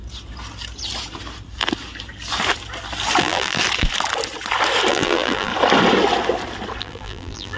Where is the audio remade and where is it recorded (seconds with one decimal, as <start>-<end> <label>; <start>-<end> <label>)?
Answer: 0.0-3.2 recorded; 3.2-3.6 remade; 3.6-4.9 recorded; 4.9-5.5 remade; 5.5-6.8 recorded; 6.8-7.6 remade